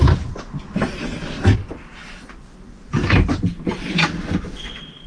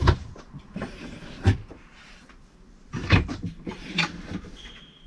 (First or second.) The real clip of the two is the first